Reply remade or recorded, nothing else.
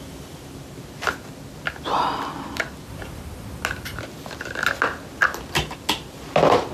recorded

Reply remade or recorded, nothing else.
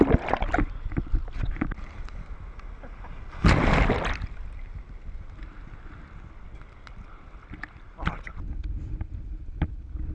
recorded